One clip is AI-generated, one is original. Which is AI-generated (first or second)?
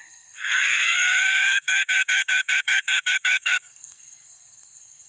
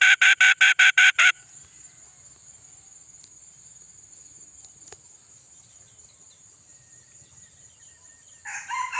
first